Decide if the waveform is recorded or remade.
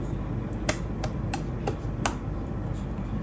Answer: recorded